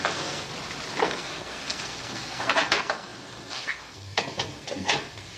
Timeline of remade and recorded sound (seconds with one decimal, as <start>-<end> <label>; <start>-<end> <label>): 0.0-0.5 remade; 0.5-1.0 recorded; 1.0-5.4 remade